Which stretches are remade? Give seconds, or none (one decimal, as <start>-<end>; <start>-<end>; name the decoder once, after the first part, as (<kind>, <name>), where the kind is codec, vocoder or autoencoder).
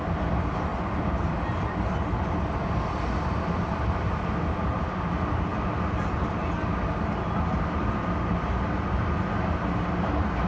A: none